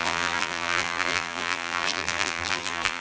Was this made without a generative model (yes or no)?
no